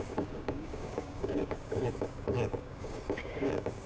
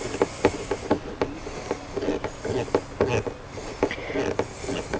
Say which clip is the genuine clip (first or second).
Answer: second